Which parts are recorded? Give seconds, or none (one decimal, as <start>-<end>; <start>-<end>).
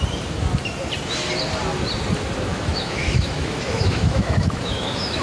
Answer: 0.0-2.5